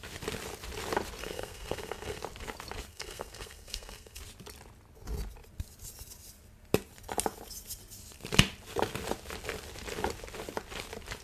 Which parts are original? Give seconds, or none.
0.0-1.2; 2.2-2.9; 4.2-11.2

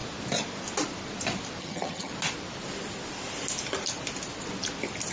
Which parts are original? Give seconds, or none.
0.0-1.6; 2.1-5.1

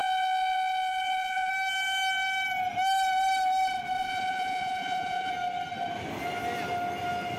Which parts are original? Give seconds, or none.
1.5-4.1; 5.3-7.4